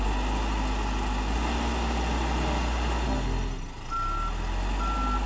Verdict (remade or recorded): recorded